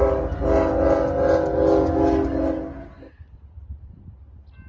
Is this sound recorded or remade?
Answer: recorded